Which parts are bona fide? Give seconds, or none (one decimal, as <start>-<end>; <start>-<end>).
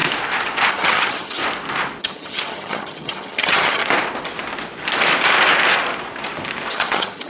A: 0.0-0.7; 1.4-2.0; 3.8-6.7